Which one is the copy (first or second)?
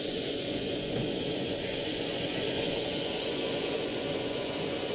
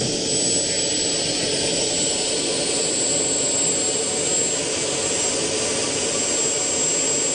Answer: first